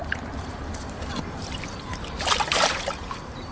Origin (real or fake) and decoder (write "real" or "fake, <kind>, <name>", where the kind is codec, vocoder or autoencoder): fake, vocoder, BigVGAN v2